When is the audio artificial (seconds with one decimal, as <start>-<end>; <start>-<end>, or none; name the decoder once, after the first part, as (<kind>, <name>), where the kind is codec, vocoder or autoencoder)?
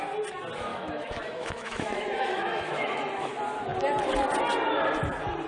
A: 0.7-3.3 (autoencoder, DAC-VAE)